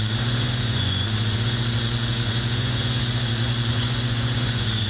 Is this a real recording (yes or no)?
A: no